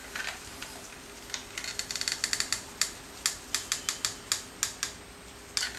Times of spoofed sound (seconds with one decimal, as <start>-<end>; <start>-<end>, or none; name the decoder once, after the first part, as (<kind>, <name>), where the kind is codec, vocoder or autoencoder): 0.0-1.2 (vocoder, BigVGAN v2)